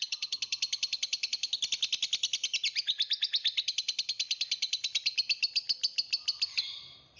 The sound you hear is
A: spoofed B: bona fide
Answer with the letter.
B